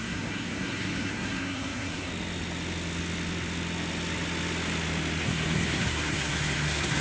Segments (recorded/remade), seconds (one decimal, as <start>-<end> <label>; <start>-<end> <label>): 0.0-2.1 remade; 2.1-5.2 recorded; 5.2-7.0 remade